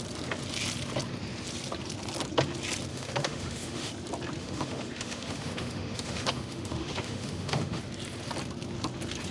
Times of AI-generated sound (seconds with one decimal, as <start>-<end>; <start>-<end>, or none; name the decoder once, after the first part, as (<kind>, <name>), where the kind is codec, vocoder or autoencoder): 2.9-3.9 (autoencoder, DAC-VAE); 4.4-7.8